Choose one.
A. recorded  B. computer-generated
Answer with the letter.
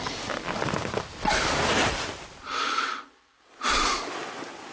A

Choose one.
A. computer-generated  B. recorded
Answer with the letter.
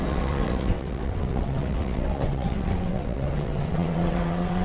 A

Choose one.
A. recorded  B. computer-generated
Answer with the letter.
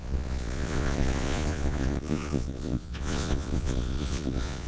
B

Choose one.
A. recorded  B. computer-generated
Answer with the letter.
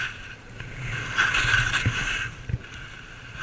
A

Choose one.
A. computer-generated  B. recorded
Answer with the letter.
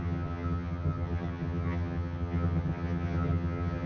A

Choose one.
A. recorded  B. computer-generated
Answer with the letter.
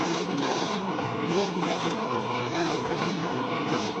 B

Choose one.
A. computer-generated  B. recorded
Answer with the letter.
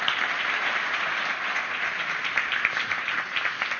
B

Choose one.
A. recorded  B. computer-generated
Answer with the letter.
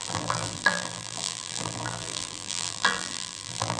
B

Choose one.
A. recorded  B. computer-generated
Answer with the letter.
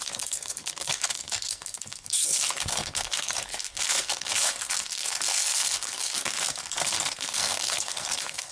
B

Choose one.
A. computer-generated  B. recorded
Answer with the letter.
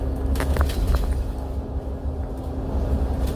B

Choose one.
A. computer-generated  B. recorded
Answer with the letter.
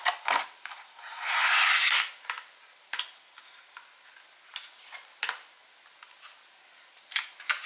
B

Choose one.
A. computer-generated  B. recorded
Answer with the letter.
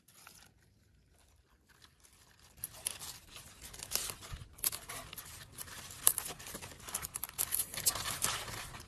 B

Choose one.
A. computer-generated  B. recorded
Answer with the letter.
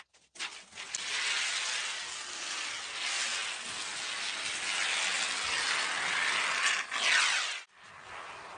B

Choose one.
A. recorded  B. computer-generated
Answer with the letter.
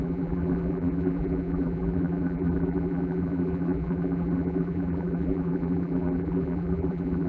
B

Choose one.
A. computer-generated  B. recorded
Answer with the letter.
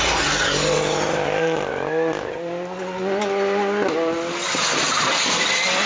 B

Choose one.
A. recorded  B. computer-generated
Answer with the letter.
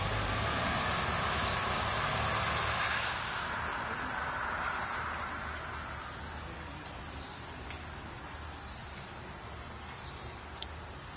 A